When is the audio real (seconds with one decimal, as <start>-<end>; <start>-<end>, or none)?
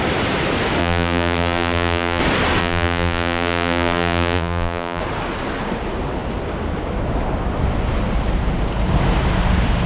0.0-0.8; 2.2-2.6; 5.0-9.9